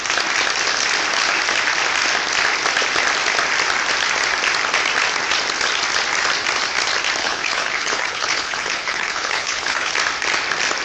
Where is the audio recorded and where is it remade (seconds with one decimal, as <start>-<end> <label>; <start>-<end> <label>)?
0.0-7.2 recorded; 7.2-9.9 remade; 9.9-10.8 recorded